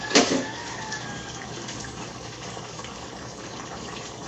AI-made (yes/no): yes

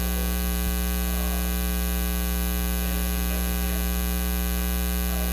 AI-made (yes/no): no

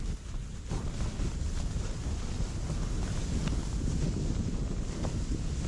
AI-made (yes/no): no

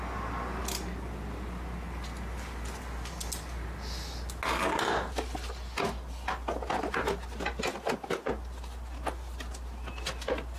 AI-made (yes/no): no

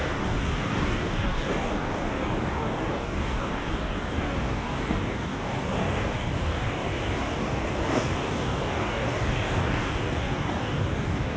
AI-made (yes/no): yes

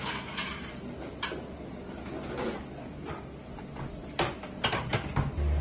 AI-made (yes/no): no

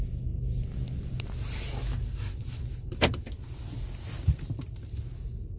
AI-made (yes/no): no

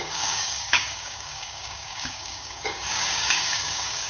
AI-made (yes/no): yes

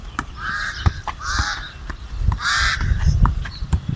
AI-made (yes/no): no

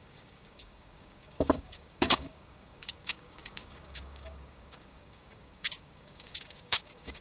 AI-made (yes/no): yes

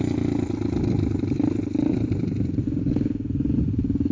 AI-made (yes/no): no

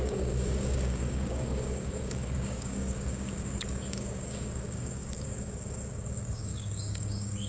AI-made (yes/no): yes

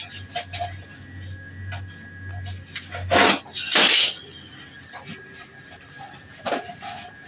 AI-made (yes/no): no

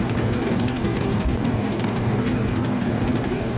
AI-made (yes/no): yes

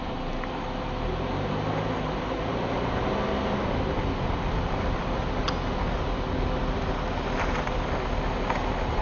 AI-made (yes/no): no